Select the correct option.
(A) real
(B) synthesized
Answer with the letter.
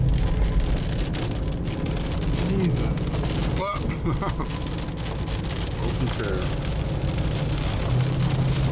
A